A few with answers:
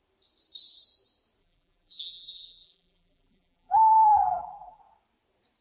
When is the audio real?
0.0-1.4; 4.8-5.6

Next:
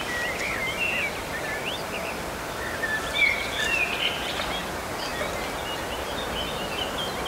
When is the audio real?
0.0-7.3

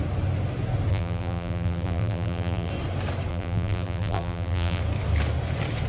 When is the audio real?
0.0-0.9; 2.7-3.3; 4.8-5.9

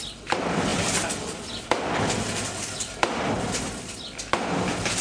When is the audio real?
none

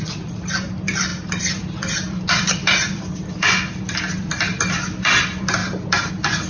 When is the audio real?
5.6-6.1

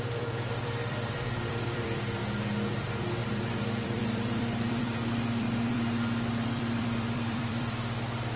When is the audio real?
2.2-2.7

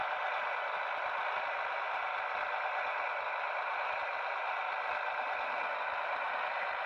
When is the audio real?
0.0-6.9